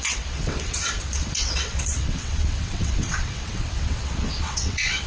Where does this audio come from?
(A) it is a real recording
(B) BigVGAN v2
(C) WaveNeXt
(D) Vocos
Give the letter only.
C